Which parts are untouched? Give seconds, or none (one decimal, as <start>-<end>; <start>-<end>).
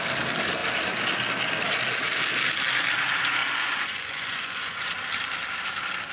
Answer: 0.0-3.4; 4.9-6.1